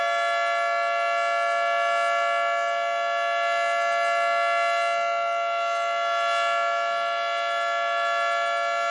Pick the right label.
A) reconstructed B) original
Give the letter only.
B